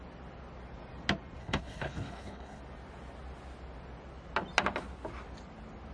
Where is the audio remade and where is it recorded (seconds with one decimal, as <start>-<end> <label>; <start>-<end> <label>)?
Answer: 0.0-1.4 recorded; 1.4-2.6 remade; 2.6-5.9 recorded